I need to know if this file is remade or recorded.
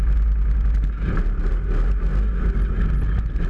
recorded